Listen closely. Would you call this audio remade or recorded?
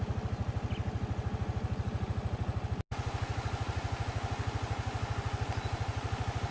recorded